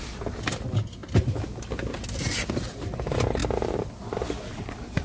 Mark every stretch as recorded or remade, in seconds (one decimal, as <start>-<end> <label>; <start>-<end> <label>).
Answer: 0.0-5.0 recorded